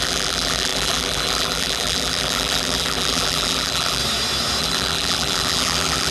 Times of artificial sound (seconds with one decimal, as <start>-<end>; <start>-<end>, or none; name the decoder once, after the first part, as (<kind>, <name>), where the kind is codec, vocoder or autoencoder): 0.0-4.0 (vocoder, BigVGAN v2); 4.6-6.1